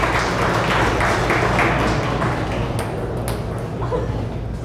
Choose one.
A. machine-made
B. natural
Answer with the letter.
B